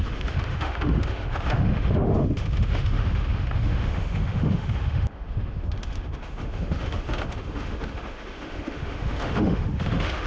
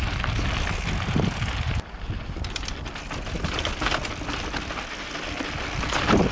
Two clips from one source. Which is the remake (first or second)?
first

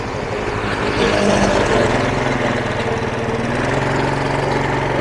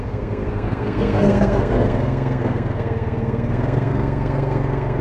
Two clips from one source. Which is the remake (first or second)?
second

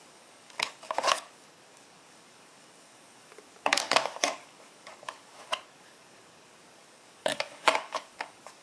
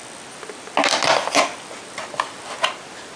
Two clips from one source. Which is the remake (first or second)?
first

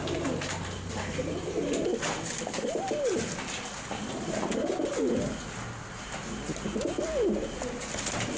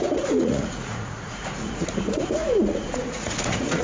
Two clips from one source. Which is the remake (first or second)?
second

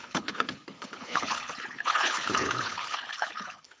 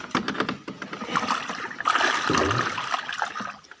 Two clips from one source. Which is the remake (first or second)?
first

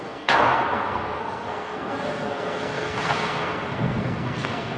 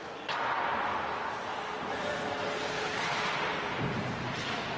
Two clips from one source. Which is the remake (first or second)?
first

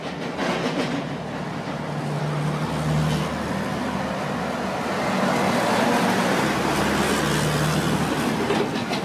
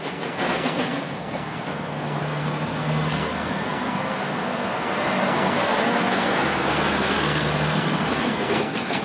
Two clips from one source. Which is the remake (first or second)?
second